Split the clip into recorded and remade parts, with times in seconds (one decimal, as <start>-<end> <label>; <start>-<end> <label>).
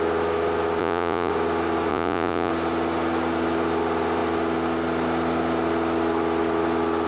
0.0-0.8 recorded; 0.8-1.3 remade; 1.3-1.9 recorded; 1.9-2.5 remade; 2.5-7.1 recorded